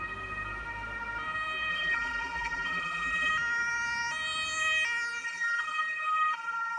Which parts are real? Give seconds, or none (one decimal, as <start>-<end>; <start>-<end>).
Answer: 0.0-1.7; 3.3-5.2